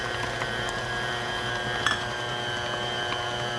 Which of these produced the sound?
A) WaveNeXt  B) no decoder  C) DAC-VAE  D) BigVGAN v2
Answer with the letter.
B